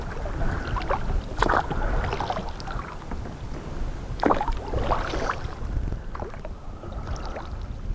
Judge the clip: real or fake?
real